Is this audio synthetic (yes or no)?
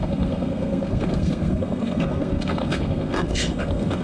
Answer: yes